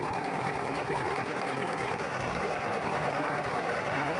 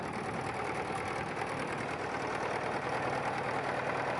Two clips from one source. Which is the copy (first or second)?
first